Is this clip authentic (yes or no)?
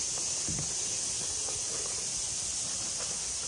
yes